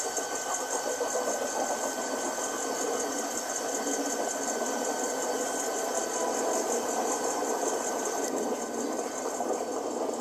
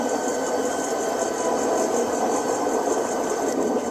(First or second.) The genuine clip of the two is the second